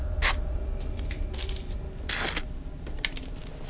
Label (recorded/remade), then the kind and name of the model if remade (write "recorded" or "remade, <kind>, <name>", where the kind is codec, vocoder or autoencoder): recorded